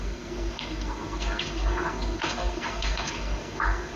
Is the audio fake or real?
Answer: fake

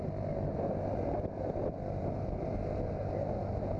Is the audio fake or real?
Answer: real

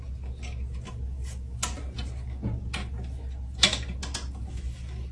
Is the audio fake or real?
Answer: real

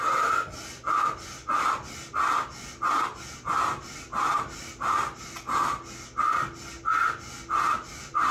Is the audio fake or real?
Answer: real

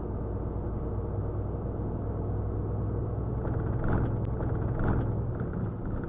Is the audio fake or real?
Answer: real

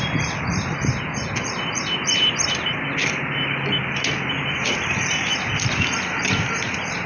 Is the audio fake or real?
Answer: real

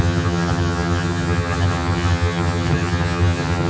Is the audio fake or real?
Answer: fake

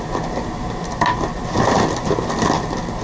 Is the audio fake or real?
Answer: real